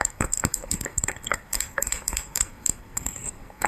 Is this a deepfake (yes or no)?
yes